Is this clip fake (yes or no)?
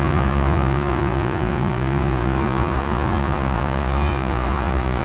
yes